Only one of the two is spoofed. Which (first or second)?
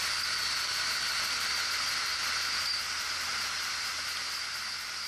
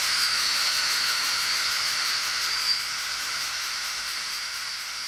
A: second